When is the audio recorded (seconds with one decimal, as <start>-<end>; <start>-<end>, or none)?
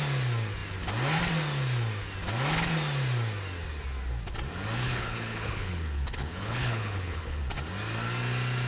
0.0-4.8; 7.4-8.7